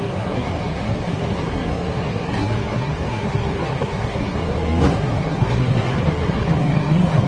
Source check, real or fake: fake